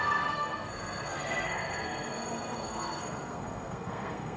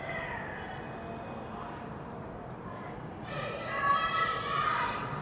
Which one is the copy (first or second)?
first